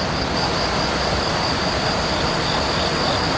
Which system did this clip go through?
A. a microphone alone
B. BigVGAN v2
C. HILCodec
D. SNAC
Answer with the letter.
A